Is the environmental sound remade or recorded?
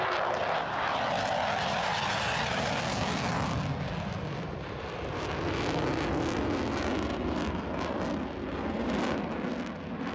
recorded